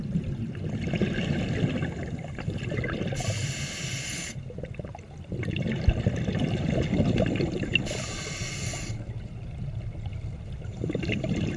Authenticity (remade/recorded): recorded